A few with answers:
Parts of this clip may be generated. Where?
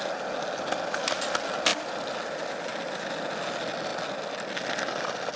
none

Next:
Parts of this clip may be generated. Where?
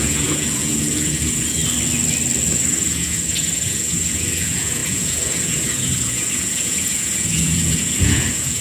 0.0-1.6 (vocoder, Vocos); 2.4-8.6